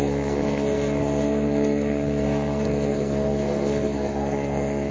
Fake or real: fake